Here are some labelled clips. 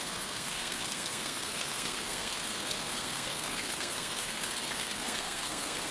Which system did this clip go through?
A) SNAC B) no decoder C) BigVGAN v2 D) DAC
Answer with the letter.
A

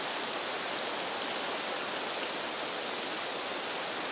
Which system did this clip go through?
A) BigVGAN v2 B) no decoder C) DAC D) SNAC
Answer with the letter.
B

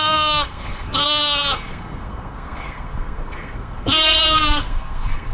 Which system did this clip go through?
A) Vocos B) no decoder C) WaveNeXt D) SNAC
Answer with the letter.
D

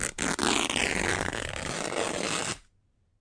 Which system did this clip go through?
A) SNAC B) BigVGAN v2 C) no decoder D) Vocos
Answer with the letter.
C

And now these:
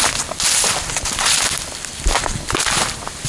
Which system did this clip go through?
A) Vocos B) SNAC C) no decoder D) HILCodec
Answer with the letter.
C